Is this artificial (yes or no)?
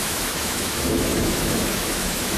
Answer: yes